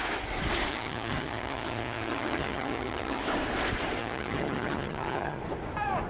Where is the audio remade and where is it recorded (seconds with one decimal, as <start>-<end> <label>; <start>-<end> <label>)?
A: 0.0-0.7 recorded; 0.7-3.2 remade; 3.2-4.0 recorded; 4.0-5.4 remade; 5.4-6.1 recorded